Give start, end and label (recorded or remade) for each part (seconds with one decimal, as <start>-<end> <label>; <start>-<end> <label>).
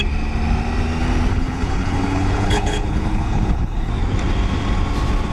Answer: 0.0-1.3 recorded; 1.3-3.9 remade; 3.9-5.3 recorded